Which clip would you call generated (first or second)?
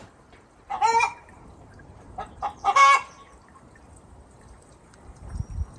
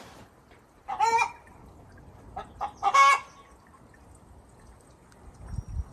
first